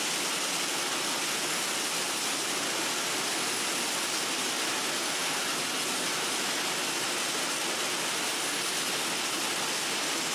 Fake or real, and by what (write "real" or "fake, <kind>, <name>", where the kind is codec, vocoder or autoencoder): real